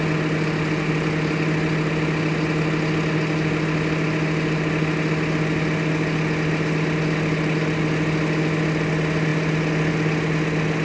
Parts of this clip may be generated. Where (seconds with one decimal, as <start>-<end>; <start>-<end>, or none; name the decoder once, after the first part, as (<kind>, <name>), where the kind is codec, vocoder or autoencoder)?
none

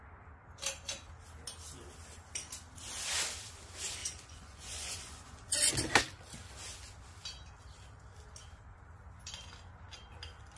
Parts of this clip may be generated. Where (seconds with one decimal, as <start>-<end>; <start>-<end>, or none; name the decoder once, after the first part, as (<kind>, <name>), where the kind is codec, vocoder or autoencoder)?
4.0-5.7 (vocoder, Vocos)

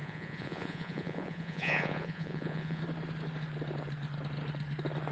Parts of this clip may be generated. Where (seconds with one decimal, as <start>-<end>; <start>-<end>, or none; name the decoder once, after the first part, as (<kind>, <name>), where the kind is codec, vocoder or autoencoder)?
0.0-2.8 (vocoder, Vocos)